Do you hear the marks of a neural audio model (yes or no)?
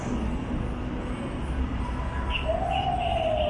no